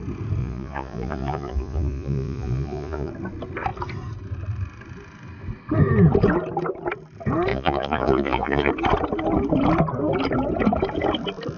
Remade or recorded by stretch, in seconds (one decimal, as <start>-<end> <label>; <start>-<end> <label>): 0.0-0.4 recorded; 0.4-3.1 remade; 3.1-7.5 recorded; 7.5-8.7 remade; 8.7-11.6 recorded

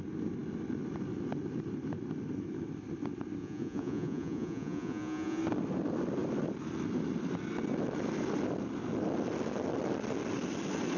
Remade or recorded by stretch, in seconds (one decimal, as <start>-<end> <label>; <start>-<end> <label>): 0.0-3.4 recorded; 3.4-5.4 remade; 5.4-11.0 recorded

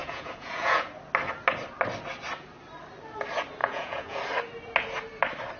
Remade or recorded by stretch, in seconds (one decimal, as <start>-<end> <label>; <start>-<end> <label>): 0.0-0.9 remade; 0.9-3.6 recorded; 3.6-4.2 remade; 4.2-5.6 recorded

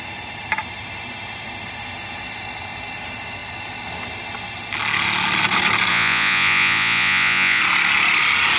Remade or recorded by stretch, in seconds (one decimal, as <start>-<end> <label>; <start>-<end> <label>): 0.0-5.9 recorded; 5.9-7.6 remade; 7.6-8.6 recorded